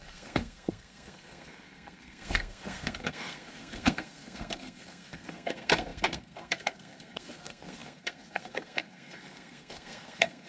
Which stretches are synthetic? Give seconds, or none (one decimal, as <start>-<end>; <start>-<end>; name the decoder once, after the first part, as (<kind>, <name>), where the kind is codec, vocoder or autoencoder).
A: 0.0-10.5 (codec, SNAC)